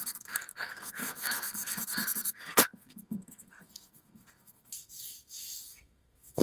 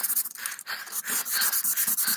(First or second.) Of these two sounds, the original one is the second